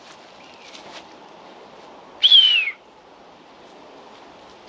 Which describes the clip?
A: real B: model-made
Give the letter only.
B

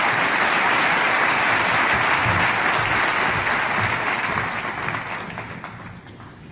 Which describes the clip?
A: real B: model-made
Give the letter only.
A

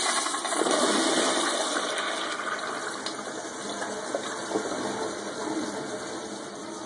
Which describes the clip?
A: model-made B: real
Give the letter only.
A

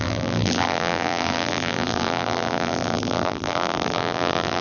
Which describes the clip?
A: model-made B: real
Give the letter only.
A